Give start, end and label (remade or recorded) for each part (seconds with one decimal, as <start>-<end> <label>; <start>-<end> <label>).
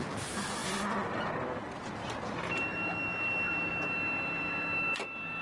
0.0-5.4 recorded